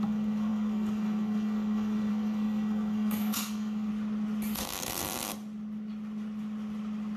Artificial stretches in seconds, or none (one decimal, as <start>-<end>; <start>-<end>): 0.0-3.9